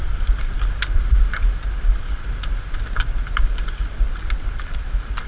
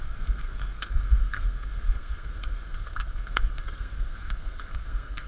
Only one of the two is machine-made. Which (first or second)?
second